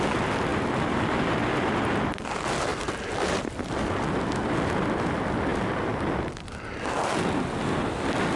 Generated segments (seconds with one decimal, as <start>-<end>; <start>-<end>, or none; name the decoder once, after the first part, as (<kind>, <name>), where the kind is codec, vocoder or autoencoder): none